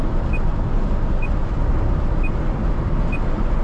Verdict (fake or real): real